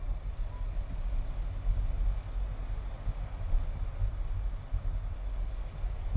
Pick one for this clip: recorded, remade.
recorded